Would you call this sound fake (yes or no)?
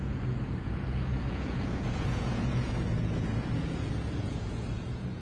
yes